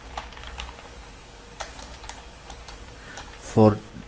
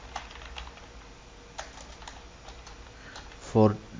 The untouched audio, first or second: second